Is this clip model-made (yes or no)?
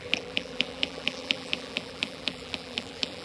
yes